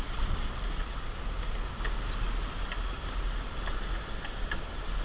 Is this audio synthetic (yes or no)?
no